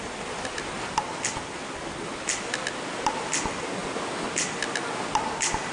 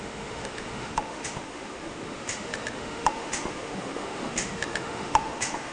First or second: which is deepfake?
second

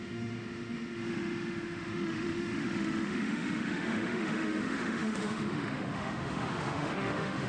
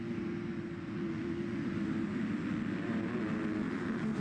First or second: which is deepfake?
first